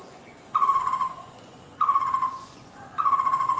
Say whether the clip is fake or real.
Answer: fake